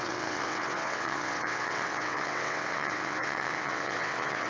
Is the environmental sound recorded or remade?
remade